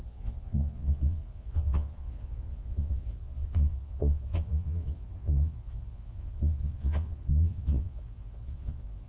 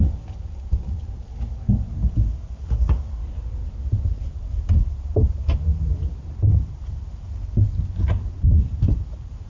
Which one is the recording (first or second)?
second